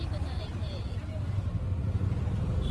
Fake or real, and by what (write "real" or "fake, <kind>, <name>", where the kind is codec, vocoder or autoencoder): real